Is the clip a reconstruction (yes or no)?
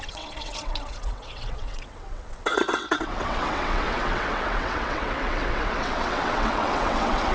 yes